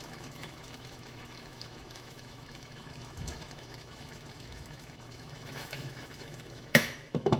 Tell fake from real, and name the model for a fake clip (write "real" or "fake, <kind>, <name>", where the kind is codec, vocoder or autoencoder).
fake, autoencoder, DAC-VAE